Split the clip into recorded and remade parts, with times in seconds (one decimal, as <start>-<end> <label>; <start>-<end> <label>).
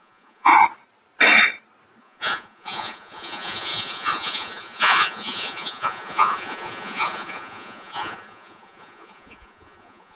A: 0.0-0.5 remade; 0.5-2.0 recorded; 2.0-10.2 remade